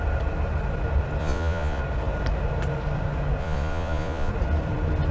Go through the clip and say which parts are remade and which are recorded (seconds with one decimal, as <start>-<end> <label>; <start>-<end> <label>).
0.0-1.2 recorded; 1.2-1.8 remade; 1.8-3.4 recorded; 3.4-4.3 remade; 4.3-5.1 recorded